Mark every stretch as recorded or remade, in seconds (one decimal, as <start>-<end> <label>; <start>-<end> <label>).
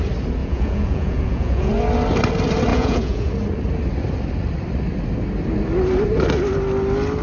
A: 0.0-0.4 recorded; 0.4-1.7 remade; 1.7-2.7 recorded; 2.7-3.3 remade; 3.3-7.2 recorded